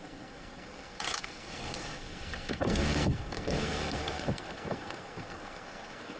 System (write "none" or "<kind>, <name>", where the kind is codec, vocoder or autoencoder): codec, SNAC